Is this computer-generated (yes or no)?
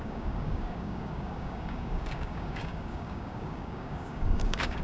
yes